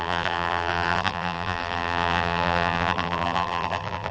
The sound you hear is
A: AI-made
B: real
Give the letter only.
A